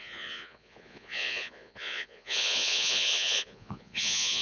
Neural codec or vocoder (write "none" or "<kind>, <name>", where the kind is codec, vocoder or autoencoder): vocoder, Vocos